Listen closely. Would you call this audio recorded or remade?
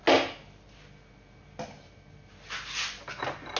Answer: recorded